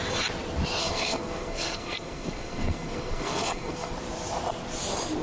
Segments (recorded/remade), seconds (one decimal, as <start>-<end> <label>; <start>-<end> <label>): 0.0-0.8 recorded; 0.8-3.9 remade; 3.9-5.2 recorded